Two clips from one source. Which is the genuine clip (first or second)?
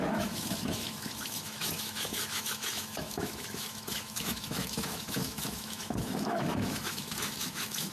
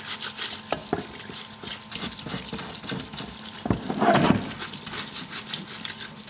second